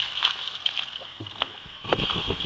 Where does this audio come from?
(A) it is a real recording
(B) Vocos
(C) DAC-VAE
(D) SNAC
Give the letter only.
D